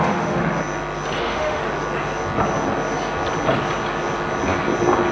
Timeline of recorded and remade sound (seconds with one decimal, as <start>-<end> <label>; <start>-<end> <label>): 0.0-0.4 remade; 0.4-1.2 recorded; 1.2-1.6 remade; 1.6-5.1 recorded